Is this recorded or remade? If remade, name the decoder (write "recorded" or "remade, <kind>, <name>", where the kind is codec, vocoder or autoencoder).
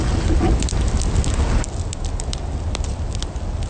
recorded